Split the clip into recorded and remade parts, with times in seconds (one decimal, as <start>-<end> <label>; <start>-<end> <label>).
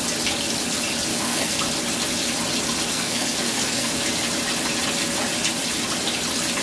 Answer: 0.0-1.1 recorded; 1.1-1.6 remade; 1.6-2.9 recorded; 2.9-4.0 remade; 4.0-6.6 recorded